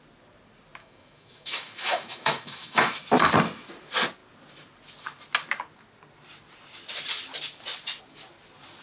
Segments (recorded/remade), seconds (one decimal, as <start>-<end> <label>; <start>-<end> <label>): 0.0-0.8 recorded; 0.8-3.0 remade; 3.0-8.8 recorded